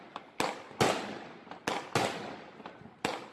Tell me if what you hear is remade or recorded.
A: recorded